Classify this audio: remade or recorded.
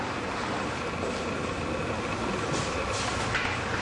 recorded